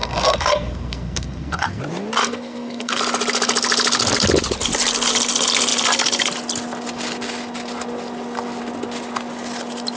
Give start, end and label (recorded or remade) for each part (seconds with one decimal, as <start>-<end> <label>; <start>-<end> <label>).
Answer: 0.0-1.8 remade; 1.8-2.2 recorded; 2.2-3.0 remade; 3.0-10.0 recorded